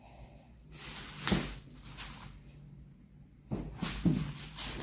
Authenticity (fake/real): real